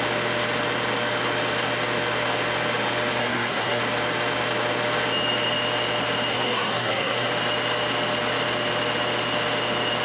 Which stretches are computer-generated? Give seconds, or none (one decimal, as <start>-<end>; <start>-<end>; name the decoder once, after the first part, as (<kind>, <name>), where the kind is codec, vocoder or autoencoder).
3.2-3.8 (codec, SNAC); 6.3-7.3